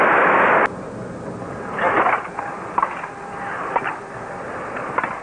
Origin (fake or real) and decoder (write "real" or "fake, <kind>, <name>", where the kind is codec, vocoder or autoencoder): real